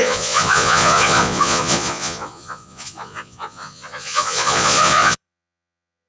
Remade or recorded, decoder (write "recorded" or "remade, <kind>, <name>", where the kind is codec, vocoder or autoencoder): remade, vocoder, Vocos